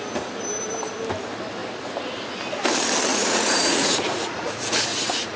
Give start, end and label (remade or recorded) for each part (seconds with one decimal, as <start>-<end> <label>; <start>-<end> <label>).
0.0-3.1 recorded; 3.1-5.4 remade